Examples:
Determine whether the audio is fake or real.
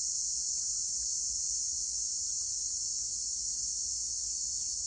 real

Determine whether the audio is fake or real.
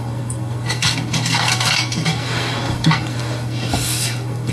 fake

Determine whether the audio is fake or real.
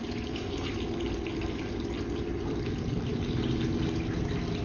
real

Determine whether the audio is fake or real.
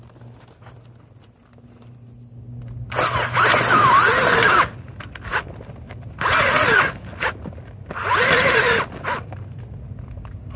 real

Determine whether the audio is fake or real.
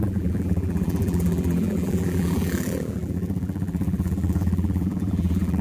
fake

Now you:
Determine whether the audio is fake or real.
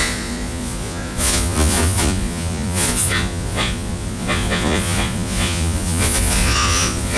fake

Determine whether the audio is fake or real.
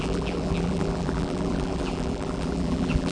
fake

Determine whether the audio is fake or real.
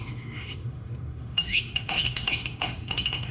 fake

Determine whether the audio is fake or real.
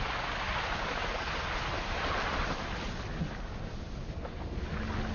real